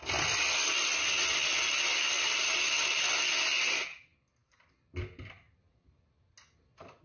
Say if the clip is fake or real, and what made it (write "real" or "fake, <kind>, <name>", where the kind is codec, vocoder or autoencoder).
real